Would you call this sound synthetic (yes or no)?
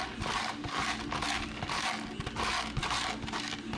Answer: no